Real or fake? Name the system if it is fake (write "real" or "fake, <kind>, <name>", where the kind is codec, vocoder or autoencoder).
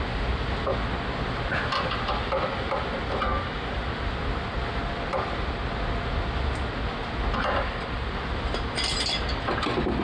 real